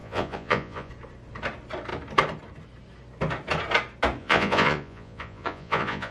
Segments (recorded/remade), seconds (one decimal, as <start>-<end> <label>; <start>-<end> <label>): 0.0-0.9 remade; 0.9-4.2 recorded; 4.2-6.1 remade